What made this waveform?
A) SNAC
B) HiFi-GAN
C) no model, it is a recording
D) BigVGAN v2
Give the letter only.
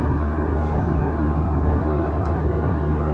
A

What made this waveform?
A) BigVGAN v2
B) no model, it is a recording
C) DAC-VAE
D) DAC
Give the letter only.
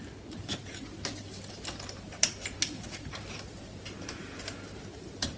B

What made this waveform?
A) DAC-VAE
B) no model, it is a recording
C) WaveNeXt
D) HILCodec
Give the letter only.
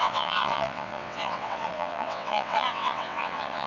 C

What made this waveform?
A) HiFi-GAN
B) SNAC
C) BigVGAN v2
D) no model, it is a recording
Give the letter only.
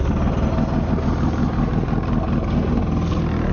D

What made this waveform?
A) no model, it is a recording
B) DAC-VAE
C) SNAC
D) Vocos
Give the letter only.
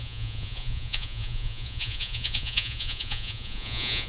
D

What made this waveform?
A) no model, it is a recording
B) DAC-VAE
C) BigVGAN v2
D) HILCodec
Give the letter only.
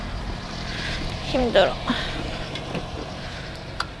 C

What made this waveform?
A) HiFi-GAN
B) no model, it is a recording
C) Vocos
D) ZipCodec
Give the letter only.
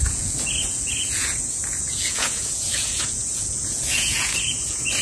C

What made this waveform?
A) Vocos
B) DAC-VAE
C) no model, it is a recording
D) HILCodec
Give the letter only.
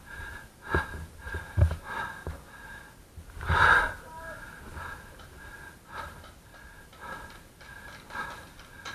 C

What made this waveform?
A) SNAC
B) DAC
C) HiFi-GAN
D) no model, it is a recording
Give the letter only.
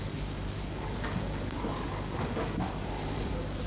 B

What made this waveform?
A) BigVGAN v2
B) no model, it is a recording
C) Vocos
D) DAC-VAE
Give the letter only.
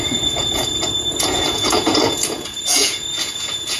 C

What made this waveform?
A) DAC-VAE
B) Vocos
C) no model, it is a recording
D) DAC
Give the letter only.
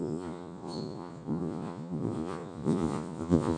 B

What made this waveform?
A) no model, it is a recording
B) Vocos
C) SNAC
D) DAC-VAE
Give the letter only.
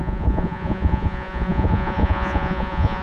B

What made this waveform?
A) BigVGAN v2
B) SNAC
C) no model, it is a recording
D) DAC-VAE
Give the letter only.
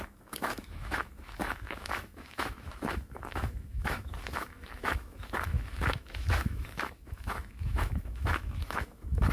D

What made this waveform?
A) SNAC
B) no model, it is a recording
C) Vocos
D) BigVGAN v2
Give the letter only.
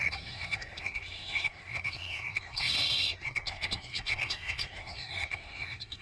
A